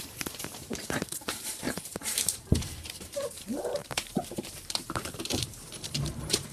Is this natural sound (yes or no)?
no